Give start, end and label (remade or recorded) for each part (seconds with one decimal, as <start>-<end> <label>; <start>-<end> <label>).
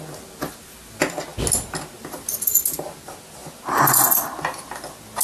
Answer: 0.0-5.2 recorded